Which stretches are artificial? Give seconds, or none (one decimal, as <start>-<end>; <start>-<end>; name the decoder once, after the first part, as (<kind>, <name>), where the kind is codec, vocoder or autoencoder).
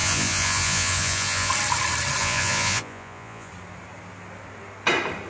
0.0-1.5 (vocoder, Vocos); 2.2-3.5